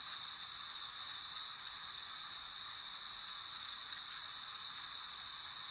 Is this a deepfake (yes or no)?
no